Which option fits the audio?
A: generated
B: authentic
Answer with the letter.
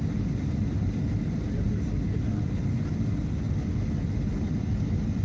B